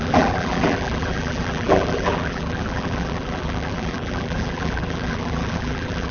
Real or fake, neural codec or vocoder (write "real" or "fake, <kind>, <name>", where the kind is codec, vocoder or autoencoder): fake, vocoder, BigVGAN v2